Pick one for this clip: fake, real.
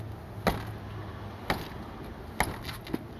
real